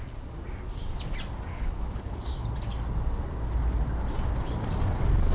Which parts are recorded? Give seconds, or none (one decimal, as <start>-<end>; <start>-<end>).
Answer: 0.0-1.5; 2.2-5.3